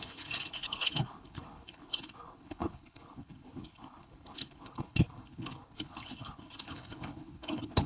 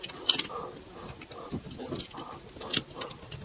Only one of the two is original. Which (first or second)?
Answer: second